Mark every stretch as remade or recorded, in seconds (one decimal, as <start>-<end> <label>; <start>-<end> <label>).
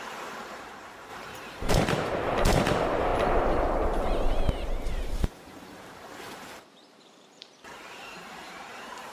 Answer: 0.0-9.1 remade